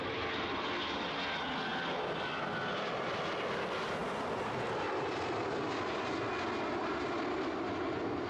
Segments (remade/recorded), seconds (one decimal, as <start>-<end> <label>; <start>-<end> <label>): 0.0-8.3 recorded